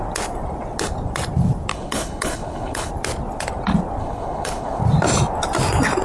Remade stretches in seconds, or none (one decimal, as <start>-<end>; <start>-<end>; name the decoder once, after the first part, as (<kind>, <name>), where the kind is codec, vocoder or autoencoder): 1.7-2.9 (codec, HILCodec); 4.0-4.8